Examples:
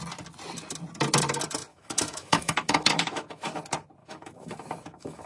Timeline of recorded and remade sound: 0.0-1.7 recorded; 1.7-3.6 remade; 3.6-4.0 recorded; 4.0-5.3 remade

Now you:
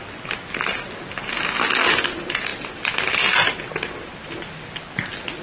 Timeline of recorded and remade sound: 0.0-5.4 recorded

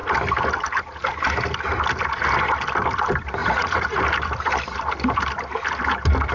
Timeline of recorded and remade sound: 0.0-3.4 recorded; 3.4-4.0 remade; 4.0-6.3 recorded